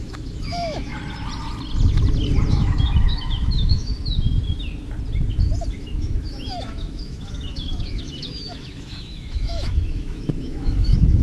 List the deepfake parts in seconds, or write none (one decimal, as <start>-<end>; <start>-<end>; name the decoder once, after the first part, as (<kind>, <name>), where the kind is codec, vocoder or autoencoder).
0.0-0.9 (autoencoder, DAC-VAE); 2.5-3.9; 5.7-11.2